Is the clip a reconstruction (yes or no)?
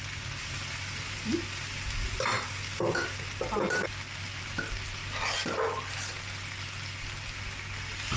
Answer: no